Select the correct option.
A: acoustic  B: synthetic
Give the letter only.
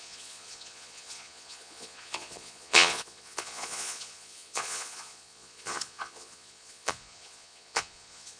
B